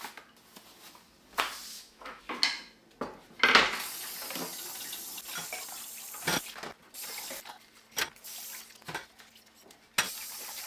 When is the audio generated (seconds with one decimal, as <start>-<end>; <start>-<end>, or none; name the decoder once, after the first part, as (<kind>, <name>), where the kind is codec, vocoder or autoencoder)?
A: 1.7-2.2 (autoencoder, DAC-VAE)